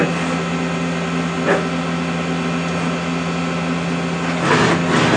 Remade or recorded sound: recorded